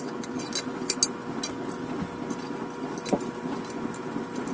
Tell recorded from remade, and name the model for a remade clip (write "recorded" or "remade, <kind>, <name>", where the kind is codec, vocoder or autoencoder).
recorded